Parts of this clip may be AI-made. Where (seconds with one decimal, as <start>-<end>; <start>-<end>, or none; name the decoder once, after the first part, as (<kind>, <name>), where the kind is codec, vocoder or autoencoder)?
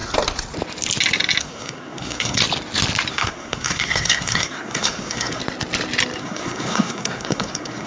1.4-2.4 (codec, SNAC); 3.1-5.4; 6.2-7.9